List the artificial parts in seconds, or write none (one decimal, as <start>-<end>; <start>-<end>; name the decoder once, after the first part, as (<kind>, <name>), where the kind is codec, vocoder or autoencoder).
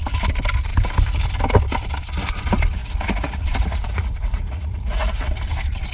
2.8-5.2 (vocoder, Vocos)